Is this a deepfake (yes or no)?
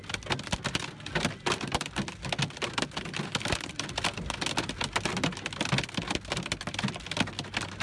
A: no